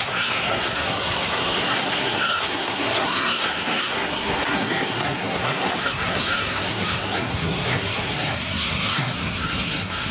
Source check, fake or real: fake